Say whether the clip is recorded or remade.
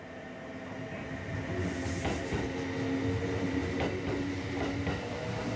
recorded